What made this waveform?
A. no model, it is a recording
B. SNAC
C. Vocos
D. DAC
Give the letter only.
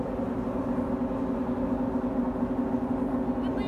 A